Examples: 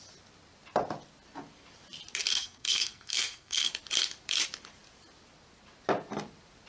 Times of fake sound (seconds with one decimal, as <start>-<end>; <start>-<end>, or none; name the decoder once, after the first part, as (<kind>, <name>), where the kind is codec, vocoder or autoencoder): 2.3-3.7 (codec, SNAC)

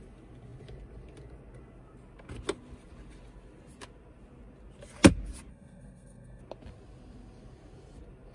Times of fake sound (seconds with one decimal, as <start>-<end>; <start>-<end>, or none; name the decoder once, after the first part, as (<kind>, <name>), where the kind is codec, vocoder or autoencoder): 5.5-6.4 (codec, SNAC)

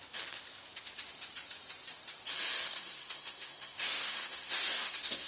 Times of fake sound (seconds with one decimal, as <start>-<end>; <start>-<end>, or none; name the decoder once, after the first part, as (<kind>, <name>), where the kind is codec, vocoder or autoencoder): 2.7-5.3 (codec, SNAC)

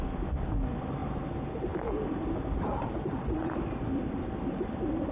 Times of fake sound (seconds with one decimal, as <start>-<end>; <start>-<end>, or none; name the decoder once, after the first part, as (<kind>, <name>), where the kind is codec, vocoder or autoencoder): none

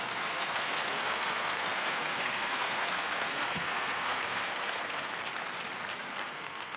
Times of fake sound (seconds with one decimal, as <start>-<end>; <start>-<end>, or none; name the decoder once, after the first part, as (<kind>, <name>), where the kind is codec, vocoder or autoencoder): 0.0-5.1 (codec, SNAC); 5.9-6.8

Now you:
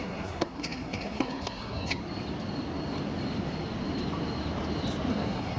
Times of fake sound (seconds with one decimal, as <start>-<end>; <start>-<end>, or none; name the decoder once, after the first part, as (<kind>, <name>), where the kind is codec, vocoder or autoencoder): 0.0-2.0 (codec, SNAC); 5.1-5.6

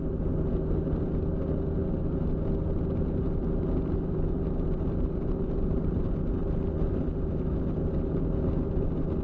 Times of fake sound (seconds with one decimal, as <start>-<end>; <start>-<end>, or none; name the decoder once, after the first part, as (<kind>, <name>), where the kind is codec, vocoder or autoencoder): none